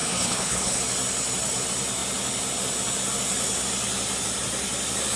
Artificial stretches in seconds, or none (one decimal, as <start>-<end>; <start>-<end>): 0.0-0.8